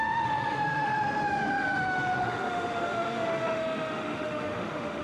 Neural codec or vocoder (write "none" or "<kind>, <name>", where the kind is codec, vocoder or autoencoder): autoencoder, DAC-VAE